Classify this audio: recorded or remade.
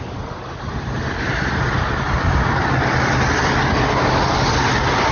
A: recorded